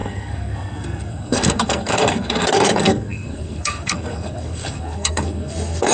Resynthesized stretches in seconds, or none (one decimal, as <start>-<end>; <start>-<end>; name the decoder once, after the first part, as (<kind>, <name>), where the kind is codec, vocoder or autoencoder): 0.0-5.9 (codec, SNAC)